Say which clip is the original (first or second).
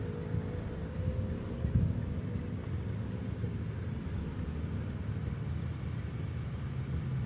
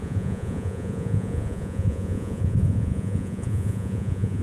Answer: first